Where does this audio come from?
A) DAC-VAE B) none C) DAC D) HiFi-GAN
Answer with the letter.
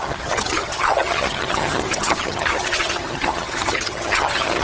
D